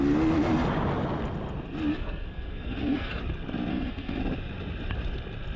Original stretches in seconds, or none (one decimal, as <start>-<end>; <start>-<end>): 0.0-1.9; 3.2-3.7; 4.2-5.6